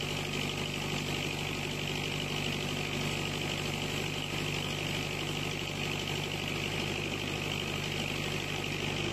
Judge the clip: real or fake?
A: real